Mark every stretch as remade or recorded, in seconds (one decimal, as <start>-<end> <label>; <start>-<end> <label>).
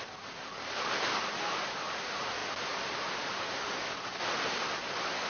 0.0-5.3 recorded